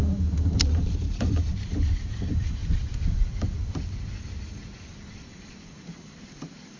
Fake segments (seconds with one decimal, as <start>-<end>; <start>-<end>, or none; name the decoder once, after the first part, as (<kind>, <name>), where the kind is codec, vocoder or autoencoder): 0.6-2.6 (vocoder, BigVGAN v2); 5.2-6.8